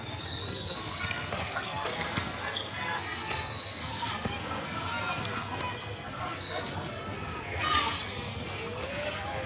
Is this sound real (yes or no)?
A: no